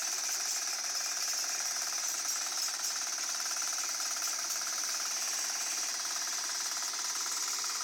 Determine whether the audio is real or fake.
fake